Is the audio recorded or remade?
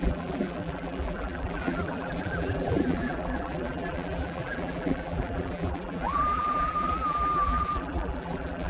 remade